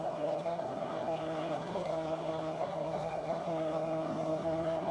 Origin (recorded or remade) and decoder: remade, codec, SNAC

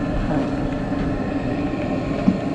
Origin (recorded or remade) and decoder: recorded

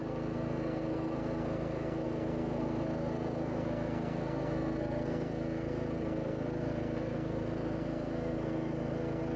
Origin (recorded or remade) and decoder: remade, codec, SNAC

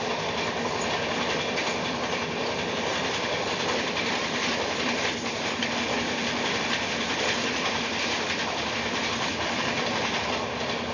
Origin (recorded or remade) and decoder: recorded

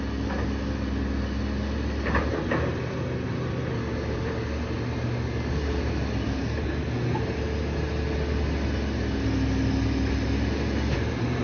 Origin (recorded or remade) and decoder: recorded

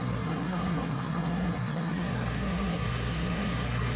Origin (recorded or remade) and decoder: remade, codec, SNAC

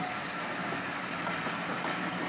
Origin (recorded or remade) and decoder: recorded